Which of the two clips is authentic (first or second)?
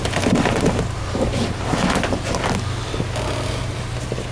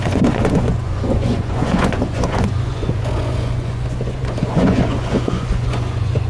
first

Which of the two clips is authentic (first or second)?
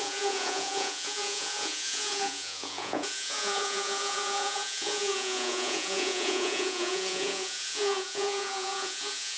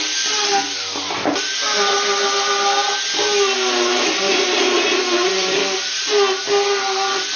second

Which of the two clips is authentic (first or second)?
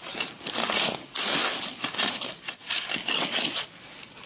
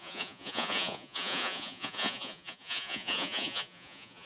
first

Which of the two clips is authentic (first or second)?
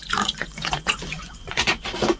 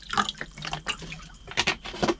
second